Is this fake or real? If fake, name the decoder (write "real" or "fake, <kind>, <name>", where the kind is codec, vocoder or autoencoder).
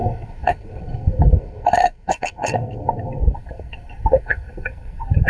fake, codec, SNAC